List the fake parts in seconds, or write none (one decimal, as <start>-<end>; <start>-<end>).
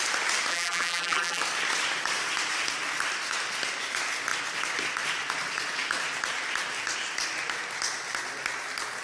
0.5-1.4